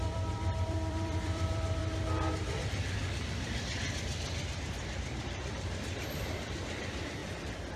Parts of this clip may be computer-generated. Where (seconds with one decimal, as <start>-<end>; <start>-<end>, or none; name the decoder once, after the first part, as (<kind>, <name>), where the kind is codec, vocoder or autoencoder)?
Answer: 0.0-1.8 (vocoder, BigVGAN v2); 2.6-3.0; 4.6-7.2